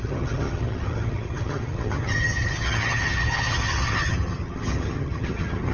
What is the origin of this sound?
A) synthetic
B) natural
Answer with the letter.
A